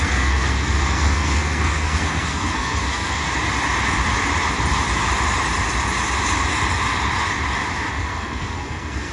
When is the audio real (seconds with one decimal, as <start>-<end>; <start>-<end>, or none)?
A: 3.2-7.9